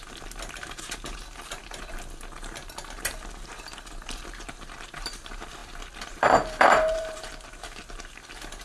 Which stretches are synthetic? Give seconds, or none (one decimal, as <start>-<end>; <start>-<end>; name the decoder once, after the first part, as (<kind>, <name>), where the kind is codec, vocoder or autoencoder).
5.6-7.3 (vocoder, BigVGAN v2)